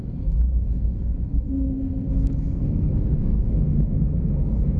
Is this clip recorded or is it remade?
remade